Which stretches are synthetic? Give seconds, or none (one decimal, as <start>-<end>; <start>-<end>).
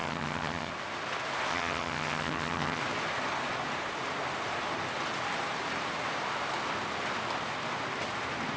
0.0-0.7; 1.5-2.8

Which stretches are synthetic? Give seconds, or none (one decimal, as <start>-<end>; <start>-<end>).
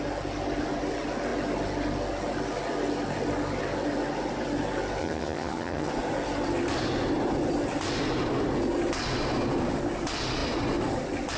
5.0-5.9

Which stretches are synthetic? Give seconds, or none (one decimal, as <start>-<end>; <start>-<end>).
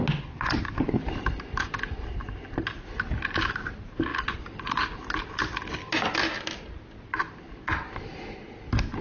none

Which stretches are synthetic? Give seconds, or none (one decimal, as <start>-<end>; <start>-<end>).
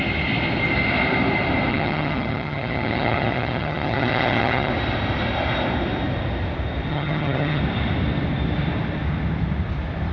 1.7-4.7; 6.9-7.6